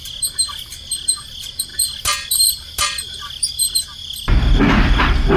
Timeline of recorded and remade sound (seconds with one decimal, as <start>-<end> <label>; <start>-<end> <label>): 0.0-5.4 recorded